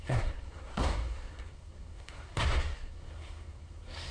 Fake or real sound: fake